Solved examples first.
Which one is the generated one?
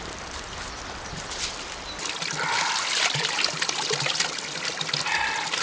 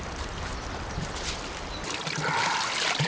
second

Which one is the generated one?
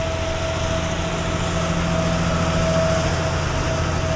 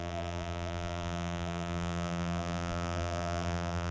second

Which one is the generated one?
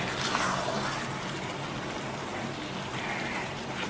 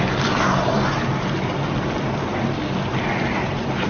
second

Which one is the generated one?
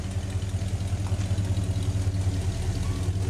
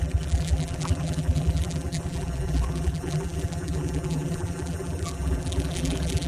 second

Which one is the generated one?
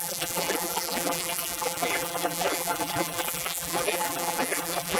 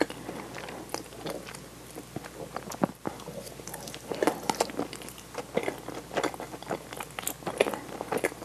first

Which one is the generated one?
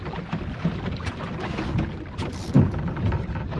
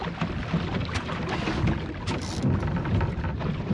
first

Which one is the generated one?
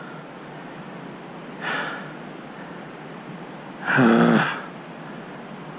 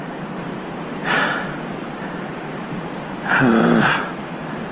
second